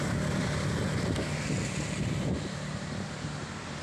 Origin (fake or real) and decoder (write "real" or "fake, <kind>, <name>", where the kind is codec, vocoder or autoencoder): real